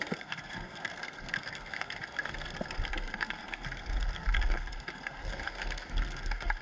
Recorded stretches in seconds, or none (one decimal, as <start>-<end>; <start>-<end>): none

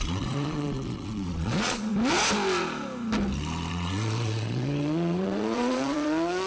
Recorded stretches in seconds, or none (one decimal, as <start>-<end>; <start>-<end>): 1.9-3.7

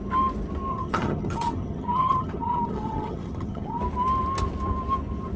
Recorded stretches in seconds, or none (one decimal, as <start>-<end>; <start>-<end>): 0.0-0.7; 3.8-5.4